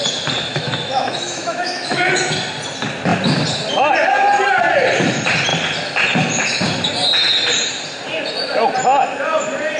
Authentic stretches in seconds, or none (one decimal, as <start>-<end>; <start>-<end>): 0.0-0.5; 2.3-9.8